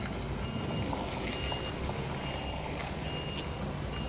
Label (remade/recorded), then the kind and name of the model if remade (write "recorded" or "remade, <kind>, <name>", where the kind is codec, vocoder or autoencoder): recorded